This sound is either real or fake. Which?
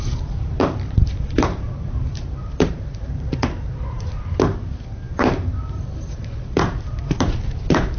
fake